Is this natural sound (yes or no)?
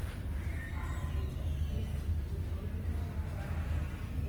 no